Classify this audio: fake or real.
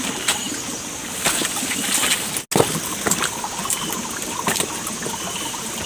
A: real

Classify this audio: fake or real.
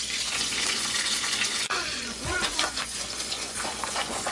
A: fake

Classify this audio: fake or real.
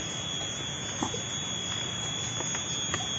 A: real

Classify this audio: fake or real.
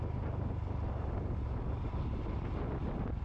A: real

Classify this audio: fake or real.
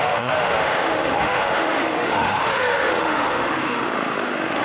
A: fake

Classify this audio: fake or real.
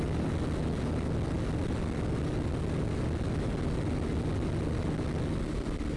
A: real